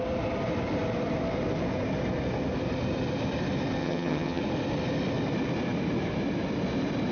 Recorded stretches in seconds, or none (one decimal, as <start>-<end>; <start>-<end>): 0.0-3.8; 4.4-7.1